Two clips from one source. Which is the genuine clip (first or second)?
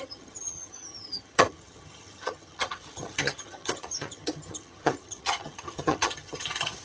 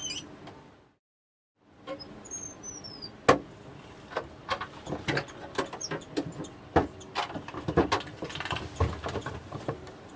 second